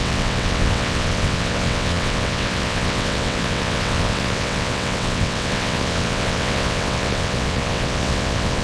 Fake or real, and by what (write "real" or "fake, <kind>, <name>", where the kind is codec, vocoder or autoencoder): fake, vocoder, WaveNeXt